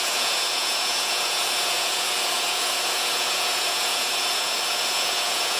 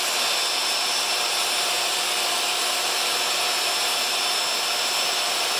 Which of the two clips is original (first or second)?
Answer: second